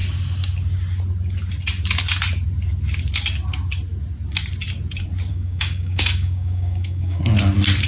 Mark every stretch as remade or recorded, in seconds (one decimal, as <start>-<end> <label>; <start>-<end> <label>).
0.0-5.3 recorded; 5.3-7.2 remade; 7.2-7.9 recorded